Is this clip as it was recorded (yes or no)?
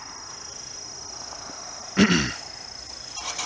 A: yes